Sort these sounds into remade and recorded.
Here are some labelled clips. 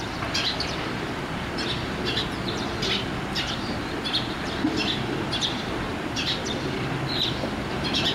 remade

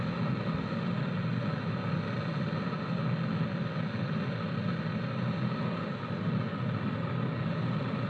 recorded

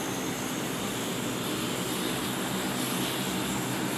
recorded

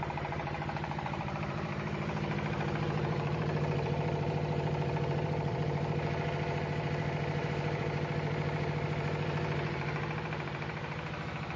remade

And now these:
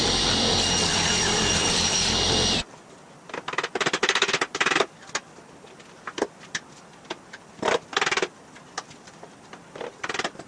remade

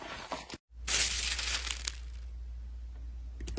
recorded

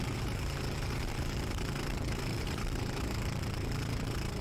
remade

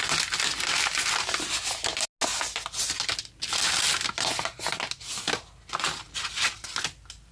recorded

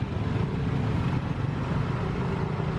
recorded